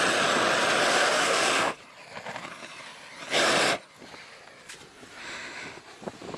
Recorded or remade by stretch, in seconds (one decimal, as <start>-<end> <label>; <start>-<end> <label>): 0.0-0.9 recorded; 0.9-1.8 remade; 1.8-5.2 recorded; 5.2-5.8 remade; 5.8-6.4 recorded